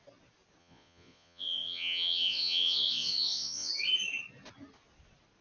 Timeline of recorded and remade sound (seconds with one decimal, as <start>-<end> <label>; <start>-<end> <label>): 0.0-0.6 recorded; 0.6-3.7 remade; 3.7-5.4 recorded